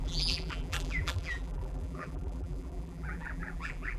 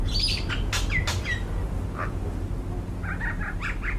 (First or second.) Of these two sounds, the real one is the second